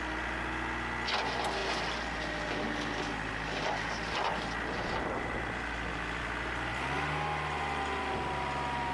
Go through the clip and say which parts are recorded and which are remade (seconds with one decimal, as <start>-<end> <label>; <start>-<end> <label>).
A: 0.0-8.9 recorded